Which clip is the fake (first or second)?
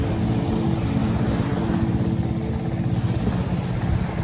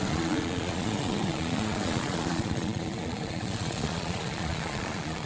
second